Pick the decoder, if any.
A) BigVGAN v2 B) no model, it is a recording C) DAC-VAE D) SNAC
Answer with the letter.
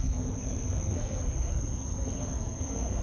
D